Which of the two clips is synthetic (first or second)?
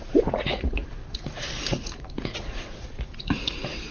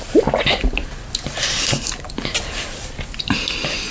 first